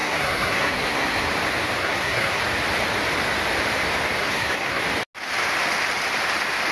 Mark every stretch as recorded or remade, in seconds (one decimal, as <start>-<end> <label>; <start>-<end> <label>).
0.0-1.3 remade; 1.3-1.8 recorded; 1.8-2.4 remade; 2.4-4.2 recorded; 4.2-4.8 remade; 4.8-6.7 recorded